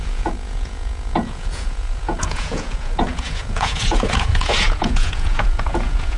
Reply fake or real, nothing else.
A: fake